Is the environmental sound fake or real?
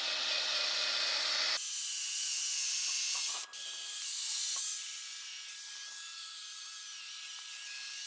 real